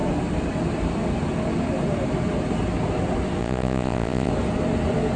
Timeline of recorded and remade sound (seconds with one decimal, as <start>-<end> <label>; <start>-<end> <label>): 0.0-3.4 recorded; 3.4-4.3 remade; 4.3-5.2 recorded